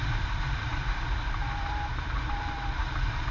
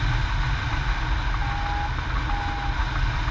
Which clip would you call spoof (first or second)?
first